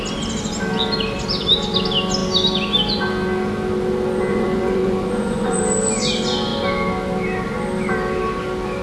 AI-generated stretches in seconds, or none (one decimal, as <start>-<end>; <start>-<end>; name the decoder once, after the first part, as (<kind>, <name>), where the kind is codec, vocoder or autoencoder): 4.3-5.6 (vocoder, Vocos)